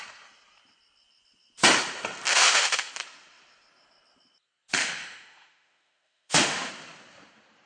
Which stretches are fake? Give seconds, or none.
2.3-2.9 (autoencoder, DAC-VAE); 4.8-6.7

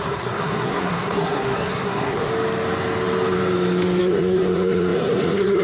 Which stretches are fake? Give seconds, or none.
0.0-2.3 (codec, SNAC); 4.0-5.6